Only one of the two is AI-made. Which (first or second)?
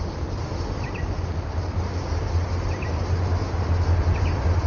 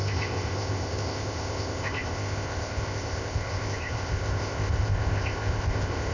second